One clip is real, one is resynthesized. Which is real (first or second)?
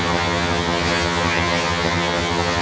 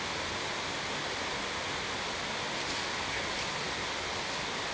second